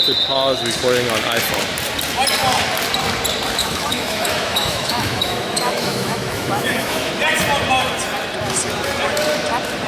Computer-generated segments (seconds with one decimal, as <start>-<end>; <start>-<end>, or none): 3.6-7.1

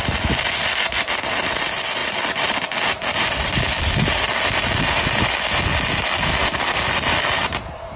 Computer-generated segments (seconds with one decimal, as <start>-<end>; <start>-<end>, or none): none

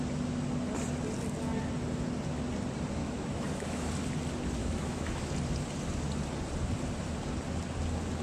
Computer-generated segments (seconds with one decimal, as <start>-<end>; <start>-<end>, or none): 3.0-3.9; 4.6-5.3

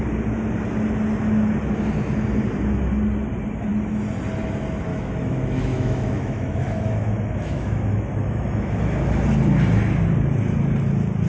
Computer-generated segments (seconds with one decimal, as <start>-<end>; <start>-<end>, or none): 4.9-8.7

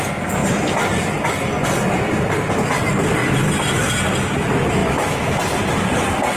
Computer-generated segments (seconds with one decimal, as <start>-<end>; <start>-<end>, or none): 4.8-5.4

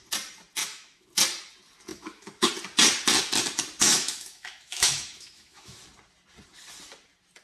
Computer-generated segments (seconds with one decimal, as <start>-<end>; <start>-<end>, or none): 0.6-1.1; 1.9-2.5; 3.8-5.8

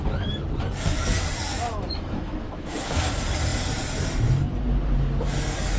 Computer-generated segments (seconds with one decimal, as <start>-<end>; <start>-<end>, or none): 1.7-2.9

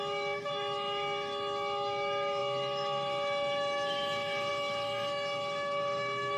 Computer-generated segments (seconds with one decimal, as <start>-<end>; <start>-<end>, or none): 0.0-6.4